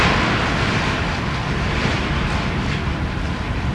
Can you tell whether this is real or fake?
real